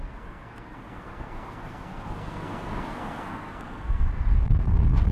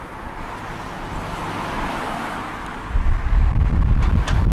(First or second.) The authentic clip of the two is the second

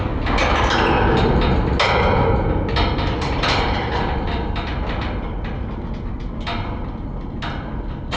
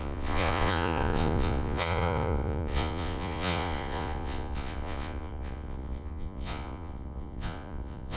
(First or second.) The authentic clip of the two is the first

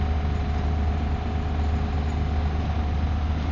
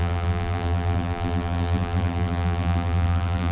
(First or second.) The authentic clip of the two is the first